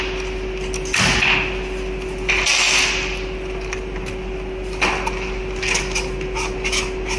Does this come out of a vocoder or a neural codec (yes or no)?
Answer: no